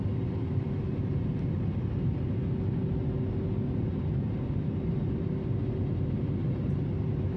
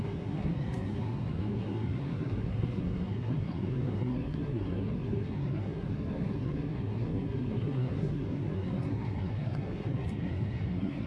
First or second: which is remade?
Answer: second